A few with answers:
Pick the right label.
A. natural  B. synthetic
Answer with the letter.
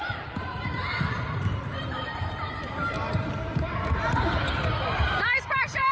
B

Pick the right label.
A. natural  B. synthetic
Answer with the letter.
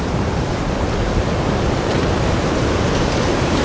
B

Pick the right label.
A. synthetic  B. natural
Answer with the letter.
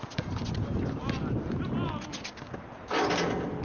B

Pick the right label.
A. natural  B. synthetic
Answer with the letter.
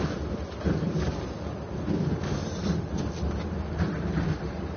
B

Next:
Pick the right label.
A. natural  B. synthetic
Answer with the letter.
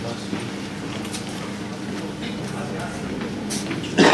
A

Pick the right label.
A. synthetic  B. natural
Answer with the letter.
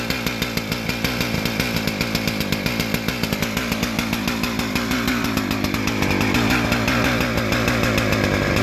B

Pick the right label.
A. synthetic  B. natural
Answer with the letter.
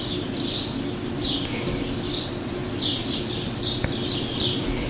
A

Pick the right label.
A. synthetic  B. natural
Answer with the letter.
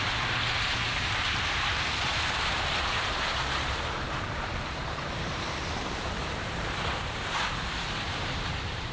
A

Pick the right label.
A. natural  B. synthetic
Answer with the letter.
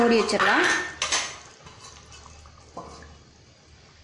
A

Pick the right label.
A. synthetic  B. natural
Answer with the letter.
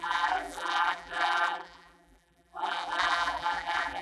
A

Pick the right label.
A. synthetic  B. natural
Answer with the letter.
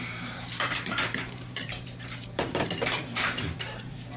A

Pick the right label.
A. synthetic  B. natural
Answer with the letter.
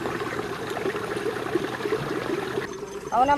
A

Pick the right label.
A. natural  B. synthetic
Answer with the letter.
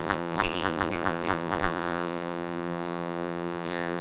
B